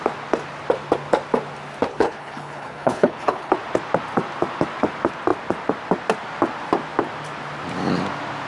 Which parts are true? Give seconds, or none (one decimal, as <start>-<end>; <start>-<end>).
0.0-1.9; 3.5-8.5